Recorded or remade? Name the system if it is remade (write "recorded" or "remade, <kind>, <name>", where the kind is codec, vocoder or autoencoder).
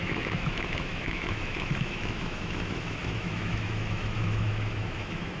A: remade, autoencoder, DAC-VAE